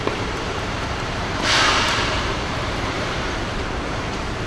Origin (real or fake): fake